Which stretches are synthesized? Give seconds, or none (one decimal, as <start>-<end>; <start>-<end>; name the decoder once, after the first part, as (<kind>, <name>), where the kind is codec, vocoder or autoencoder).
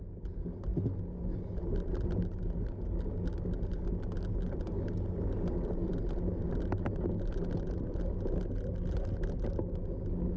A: none